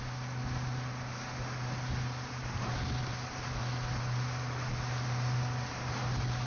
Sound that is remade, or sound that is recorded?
recorded